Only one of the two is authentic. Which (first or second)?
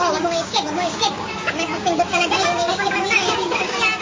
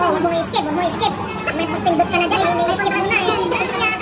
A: second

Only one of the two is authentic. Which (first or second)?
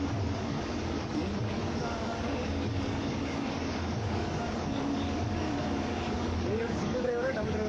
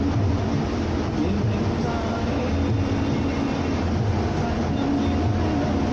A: second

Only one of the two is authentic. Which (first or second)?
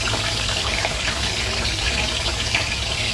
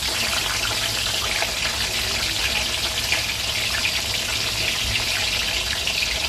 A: second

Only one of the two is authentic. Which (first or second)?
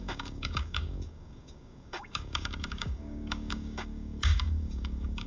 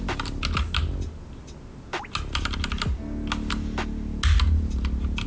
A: second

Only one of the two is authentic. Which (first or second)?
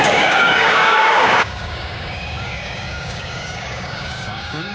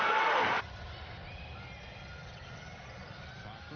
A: second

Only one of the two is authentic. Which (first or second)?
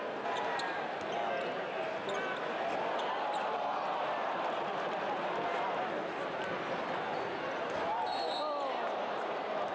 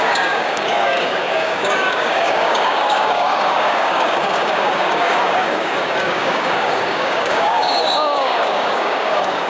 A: first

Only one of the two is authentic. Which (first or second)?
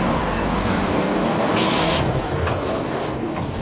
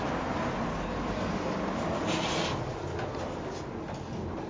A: second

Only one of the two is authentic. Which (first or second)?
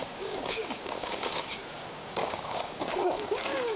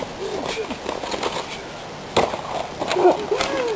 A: second